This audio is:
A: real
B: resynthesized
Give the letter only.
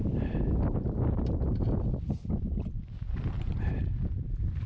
A